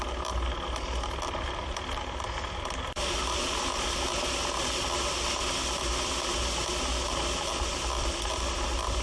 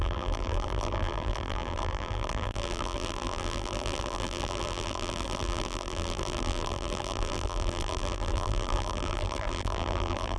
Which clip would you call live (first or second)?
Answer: first